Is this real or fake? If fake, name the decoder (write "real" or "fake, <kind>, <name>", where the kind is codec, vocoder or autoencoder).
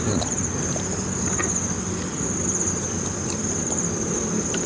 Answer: real